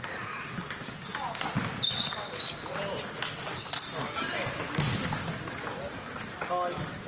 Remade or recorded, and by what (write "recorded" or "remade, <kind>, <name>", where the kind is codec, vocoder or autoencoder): recorded